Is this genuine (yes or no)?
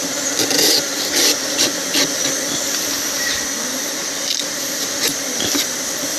no